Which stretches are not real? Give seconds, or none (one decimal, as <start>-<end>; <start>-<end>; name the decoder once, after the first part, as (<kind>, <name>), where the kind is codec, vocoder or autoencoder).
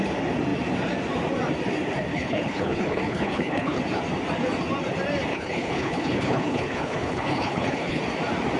2.1-3.8 (codec, HILCodec); 5.3-8.0